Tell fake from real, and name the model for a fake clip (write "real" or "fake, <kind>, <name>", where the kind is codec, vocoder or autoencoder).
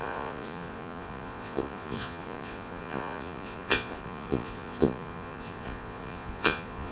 fake, vocoder, Vocos